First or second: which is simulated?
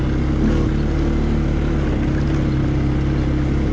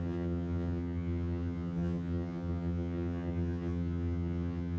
second